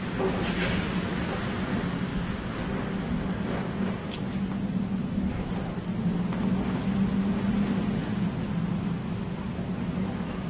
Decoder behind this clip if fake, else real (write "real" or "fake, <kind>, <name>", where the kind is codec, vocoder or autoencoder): real